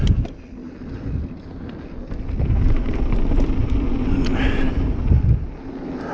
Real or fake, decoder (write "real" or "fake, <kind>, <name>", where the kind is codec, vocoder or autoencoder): real